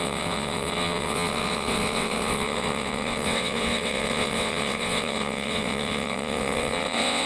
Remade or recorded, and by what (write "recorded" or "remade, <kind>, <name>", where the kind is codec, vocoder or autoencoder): remade, vocoder, WaveNeXt